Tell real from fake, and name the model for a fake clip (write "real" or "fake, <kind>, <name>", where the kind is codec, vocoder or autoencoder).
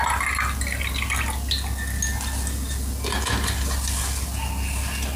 real